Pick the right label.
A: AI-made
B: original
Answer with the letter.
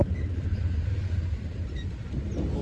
B